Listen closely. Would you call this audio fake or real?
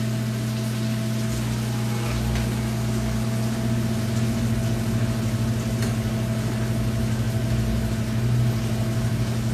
real